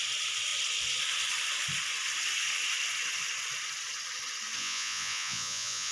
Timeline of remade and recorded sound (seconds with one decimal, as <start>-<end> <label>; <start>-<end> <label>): 0.0-4.6 recorded; 4.6-5.9 remade